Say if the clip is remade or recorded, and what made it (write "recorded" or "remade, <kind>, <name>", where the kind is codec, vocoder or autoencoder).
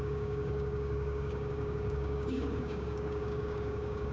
remade, codec, DAC